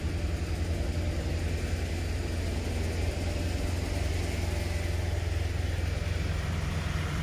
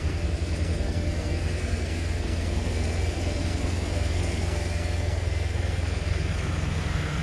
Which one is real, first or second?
first